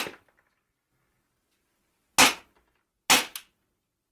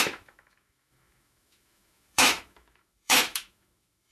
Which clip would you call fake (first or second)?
second